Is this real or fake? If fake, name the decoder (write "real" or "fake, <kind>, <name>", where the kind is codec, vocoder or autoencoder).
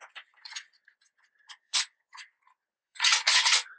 fake, vocoder, Vocos